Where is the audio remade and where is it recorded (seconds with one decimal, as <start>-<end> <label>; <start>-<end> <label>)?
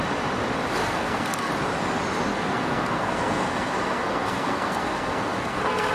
0.0-0.8 recorded; 0.8-1.5 remade; 1.5-2.3 recorded; 2.3-5.9 remade